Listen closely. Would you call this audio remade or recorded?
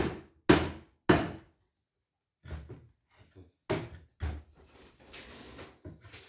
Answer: recorded